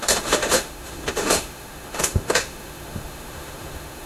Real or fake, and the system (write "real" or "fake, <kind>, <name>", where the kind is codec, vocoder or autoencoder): fake, autoencoder, DAC-VAE